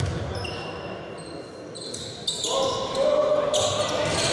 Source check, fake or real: real